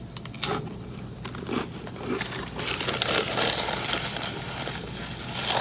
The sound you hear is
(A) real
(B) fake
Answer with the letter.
A